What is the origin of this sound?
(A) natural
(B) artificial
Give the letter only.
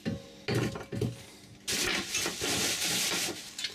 A